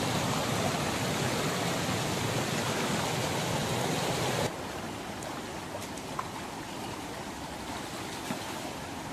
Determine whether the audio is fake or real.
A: real